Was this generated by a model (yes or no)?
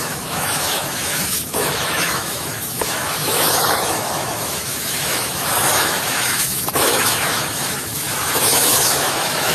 yes